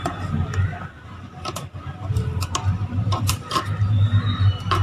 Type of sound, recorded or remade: remade